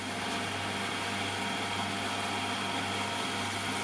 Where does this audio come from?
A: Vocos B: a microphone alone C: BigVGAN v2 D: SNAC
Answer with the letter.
B